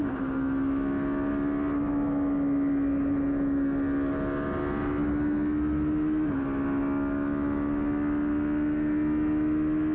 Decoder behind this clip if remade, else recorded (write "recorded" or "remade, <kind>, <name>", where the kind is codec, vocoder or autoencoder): recorded